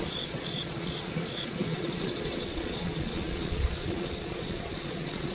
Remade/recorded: remade